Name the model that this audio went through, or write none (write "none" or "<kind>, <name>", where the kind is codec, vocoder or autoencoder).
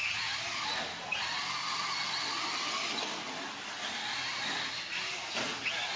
none